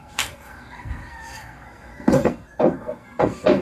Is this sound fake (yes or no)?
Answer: yes